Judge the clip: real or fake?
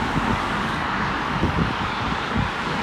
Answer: fake